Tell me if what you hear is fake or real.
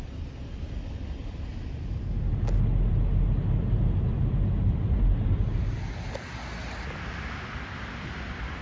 real